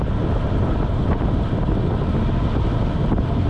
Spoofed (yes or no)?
no